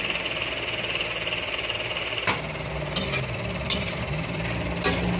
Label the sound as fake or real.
fake